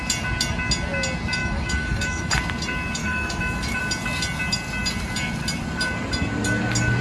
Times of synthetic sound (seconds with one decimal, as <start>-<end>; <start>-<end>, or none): 1.4-2.3; 3.0-3.8